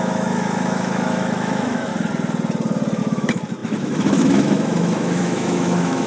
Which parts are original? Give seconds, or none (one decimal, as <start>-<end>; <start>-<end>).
1.9-3.0